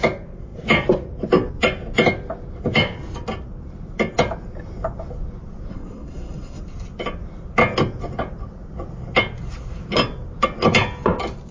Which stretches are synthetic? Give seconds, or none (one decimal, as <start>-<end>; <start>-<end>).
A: 5.7-6.6